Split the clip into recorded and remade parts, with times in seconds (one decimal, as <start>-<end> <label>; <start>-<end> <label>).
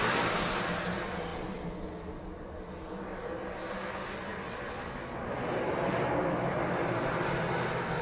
0.0-8.0 recorded